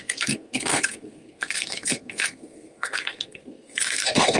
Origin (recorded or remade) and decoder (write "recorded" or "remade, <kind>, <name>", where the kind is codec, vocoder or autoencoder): remade, codec, SNAC